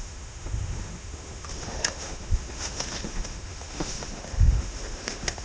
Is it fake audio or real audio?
fake